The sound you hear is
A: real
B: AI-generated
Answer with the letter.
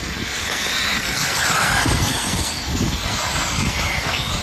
B